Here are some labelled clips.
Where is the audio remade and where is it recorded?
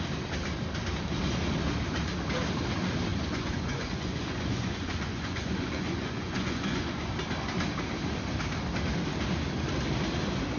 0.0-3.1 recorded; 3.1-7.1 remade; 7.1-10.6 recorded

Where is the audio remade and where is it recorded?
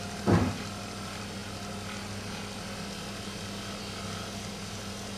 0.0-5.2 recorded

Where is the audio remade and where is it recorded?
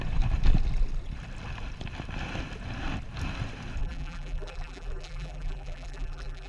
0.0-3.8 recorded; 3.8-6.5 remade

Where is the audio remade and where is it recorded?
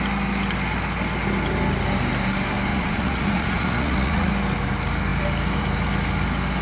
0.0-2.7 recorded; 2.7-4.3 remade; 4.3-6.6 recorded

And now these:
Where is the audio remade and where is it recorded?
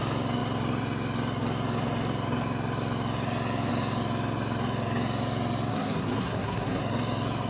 0.0-5.7 recorded; 5.7-6.8 remade; 6.8-7.5 recorded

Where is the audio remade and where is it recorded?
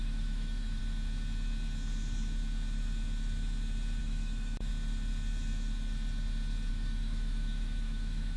0.0-0.8 remade; 0.8-4.0 recorded; 4.0-4.7 remade; 4.7-6.7 recorded; 6.7-8.4 remade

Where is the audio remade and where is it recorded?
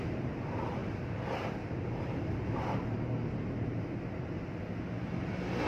0.0-0.8 recorded; 0.8-3.8 remade; 3.8-5.7 recorded